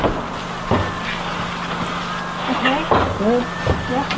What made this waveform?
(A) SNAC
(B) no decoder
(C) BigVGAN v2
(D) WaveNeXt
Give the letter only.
B